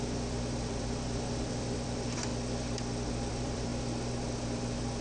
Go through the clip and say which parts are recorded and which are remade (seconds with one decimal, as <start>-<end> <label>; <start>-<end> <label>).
0.0-2.3 remade; 2.3-3.3 recorded; 3.3-3.7 remade; 3.7-5.0 recorded